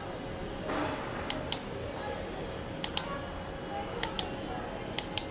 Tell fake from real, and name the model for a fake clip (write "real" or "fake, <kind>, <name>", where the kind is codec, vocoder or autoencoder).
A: real